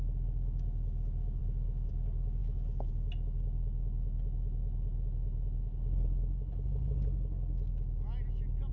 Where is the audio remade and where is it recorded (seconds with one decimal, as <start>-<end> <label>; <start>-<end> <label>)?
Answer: 0.0-8.7 recorded